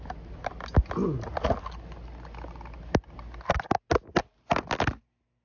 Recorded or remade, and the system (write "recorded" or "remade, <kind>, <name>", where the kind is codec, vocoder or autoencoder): recorded